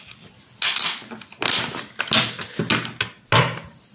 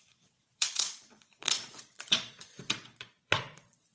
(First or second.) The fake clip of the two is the second